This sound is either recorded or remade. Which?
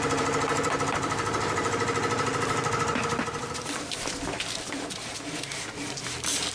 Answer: remade